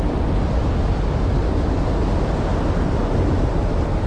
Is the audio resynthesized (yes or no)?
no